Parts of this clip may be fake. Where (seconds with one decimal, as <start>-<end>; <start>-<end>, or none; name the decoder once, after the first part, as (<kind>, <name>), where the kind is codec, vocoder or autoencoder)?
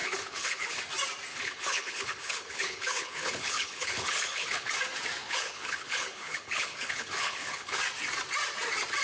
0.0-0.8 (codec, HILCodec); 1.3-4.7; 5.2-7.8